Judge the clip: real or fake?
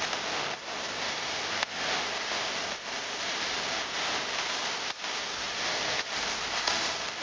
real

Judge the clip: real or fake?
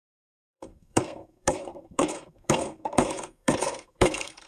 fake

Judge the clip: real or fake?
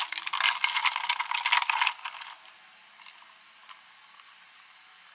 real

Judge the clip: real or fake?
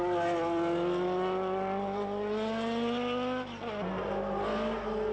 real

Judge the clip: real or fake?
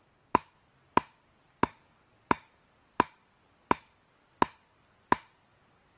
real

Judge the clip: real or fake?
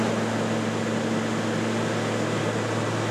real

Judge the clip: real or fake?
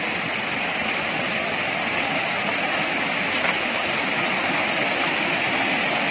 fake